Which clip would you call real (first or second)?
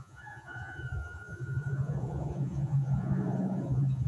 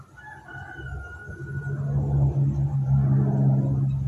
second